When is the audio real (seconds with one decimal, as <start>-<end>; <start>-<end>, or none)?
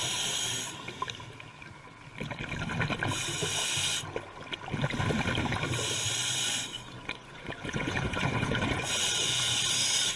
0.0-6.2; 9.6-10.2